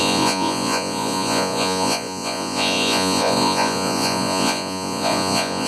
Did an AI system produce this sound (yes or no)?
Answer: yes